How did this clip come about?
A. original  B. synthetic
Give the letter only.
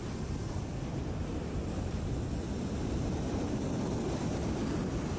A